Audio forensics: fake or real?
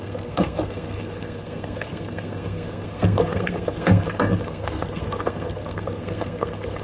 fake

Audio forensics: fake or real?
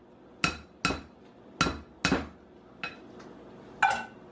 real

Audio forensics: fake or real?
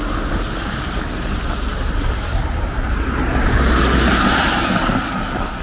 real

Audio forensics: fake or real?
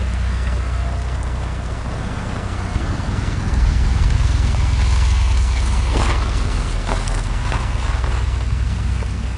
fake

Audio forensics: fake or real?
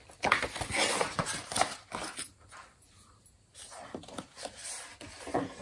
real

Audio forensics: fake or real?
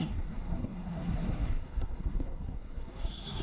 fake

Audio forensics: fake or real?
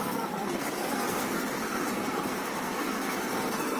fake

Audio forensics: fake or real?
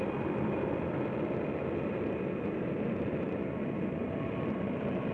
real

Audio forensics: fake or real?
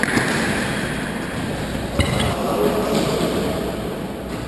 real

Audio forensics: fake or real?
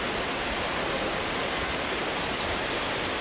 real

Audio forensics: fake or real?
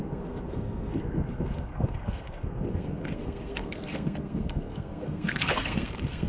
fake